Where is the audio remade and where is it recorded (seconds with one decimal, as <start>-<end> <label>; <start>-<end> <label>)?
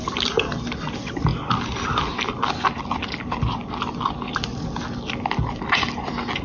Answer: 0.0-6.4 recorded